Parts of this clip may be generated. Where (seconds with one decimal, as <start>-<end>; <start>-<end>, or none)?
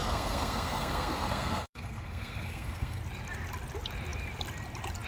0.0-3.0